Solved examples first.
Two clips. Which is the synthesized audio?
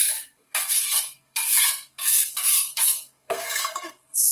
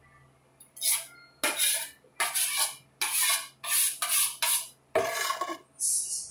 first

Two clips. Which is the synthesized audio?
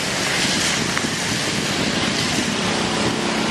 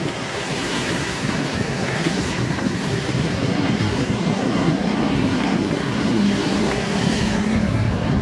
second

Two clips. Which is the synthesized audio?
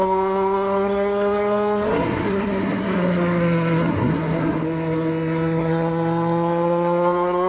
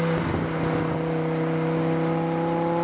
first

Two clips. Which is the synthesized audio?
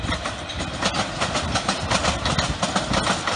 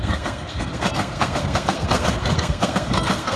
second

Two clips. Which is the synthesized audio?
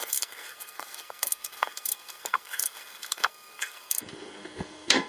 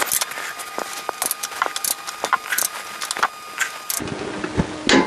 first